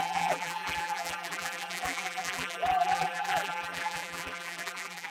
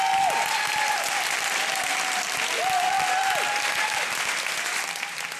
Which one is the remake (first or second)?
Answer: first